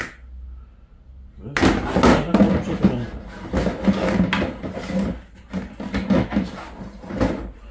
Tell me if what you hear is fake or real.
real